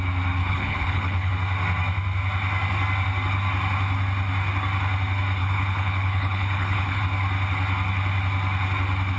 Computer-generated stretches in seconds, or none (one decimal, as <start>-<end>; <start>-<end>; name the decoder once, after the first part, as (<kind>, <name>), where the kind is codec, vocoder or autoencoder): 0.4-1.3 (codec, HILCodec); 5.4-7.0